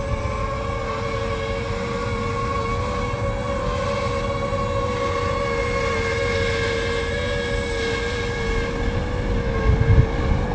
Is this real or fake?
real